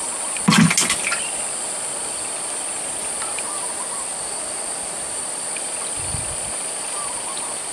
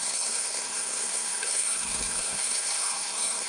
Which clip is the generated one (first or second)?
second